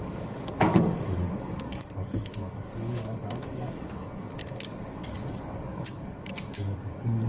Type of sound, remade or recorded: remade